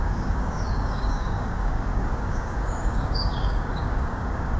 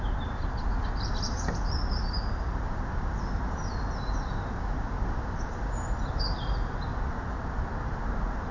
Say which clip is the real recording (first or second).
second